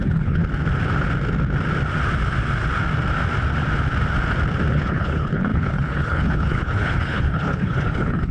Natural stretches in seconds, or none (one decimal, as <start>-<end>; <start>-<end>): 0.4-4.7